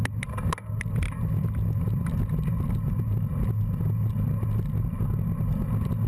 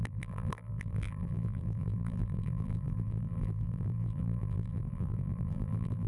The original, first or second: first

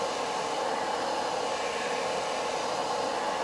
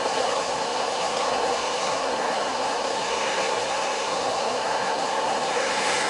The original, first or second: first